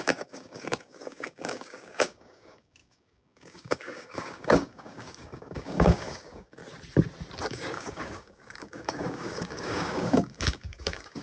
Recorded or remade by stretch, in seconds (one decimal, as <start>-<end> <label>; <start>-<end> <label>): 0.0-6.6 remade; 6.6-7.5 recorded; 7.5-11.2 remade